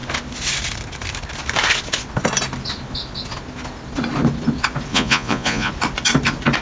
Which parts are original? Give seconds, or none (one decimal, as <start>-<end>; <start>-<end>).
0.0-4.9; 5.7-6.6